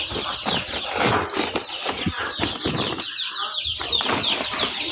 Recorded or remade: recorded